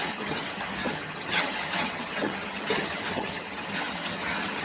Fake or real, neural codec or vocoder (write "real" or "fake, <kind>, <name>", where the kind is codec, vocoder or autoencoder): fake, vocoder, HiFi-GAN